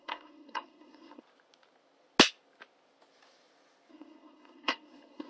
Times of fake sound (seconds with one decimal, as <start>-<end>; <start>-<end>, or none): 0.0-1.2; 3.9-5.3